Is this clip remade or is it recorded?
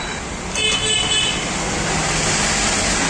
recorded